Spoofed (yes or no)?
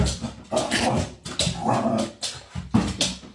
no